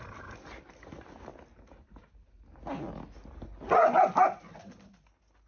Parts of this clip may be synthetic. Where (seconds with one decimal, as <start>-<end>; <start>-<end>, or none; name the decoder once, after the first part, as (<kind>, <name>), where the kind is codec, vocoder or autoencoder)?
none